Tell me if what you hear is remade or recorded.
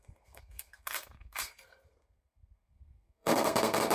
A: remade